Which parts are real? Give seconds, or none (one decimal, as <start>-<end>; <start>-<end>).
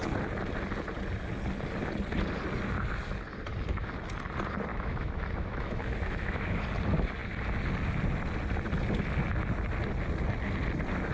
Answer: 0.0-4.7; 6.6-11.1